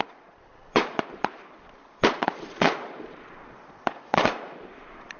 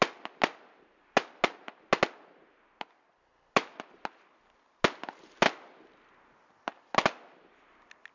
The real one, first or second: second